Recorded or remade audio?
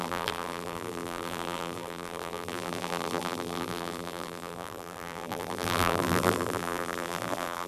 remade